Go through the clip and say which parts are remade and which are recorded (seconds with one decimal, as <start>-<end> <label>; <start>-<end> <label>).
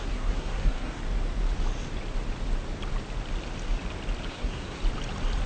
0.0-1.0 remade; 1.0-4.3 recorded; 4.3-4.8 remade; 4.8-5.5 recorded